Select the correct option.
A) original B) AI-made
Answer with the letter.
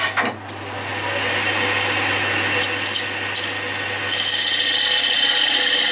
A